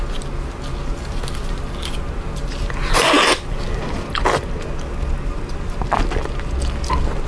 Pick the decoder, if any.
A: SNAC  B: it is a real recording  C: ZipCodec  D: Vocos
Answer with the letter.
B